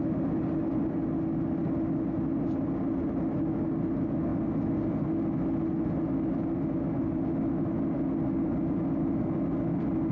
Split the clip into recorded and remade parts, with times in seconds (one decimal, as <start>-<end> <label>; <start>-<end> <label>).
0.0-10.1 recorded